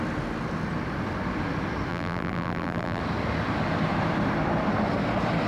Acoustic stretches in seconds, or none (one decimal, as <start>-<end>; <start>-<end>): 0.0-1.9; 3.0-5.5